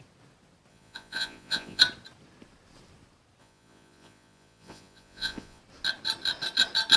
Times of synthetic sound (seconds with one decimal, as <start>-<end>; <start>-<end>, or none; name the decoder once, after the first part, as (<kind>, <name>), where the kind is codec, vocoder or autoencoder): 0.7-1.8 (vocoder, Vocos); 3.4-5.6